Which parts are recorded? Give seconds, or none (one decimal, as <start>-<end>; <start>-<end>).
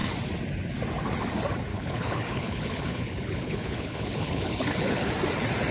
0.0-1.7; 5.1-5.7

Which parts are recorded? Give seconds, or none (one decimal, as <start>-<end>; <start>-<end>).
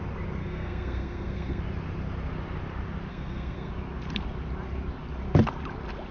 0.0-0.4; 1.6-3.1; 3.7-6.1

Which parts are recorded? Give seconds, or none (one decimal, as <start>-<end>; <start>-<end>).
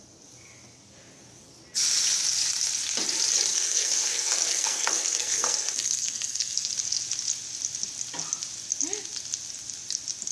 0.0-3.5; 6.7-10.3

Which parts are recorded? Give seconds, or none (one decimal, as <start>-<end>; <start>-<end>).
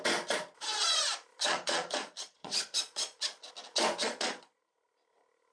0.0-1.3; 3.5-4.0; 4.6-5.5